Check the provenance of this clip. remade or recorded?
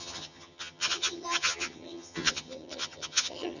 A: remade